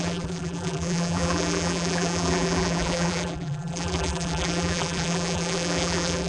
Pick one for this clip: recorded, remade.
remade